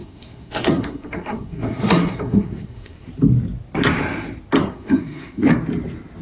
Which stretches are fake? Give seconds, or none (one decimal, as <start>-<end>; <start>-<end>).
0.0-3.1; 4.6-5.5